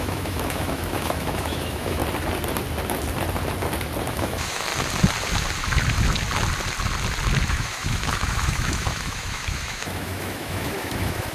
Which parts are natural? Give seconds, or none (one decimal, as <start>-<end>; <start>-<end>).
2.0-4.1; 4.7-7.5